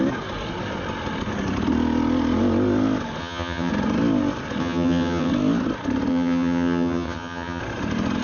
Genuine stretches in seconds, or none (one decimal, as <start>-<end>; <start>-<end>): 0.0-3.2; 3.7-4.6; 5.3-6.1; 7.6-8.2